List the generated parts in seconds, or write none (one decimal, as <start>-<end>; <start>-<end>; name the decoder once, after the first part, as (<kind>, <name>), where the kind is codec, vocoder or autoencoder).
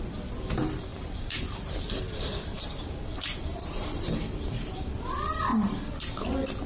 0.9-4.9 (vocoder, BigVGAN v2)